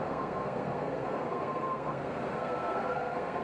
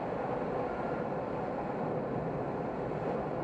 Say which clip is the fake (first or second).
first